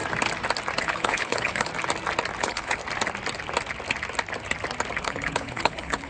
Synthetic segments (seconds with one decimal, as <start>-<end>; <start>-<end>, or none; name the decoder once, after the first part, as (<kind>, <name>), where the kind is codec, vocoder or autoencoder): 0.8-1.7 (codec, HILCodec); 2.4-2.8; 5.0-6.1